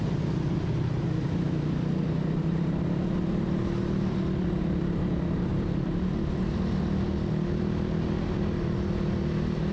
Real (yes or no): yes